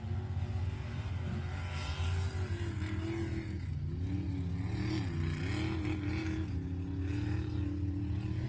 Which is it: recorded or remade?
recorded